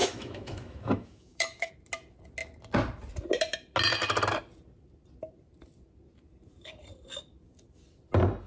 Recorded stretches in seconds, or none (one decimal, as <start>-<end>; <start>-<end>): 1.7-8.5